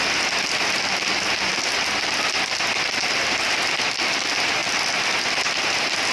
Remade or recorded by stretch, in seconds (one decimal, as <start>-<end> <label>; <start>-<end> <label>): 0.0-6.1 recorded